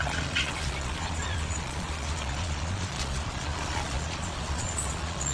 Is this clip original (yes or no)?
no